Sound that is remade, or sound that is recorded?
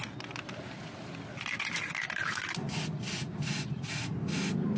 recorded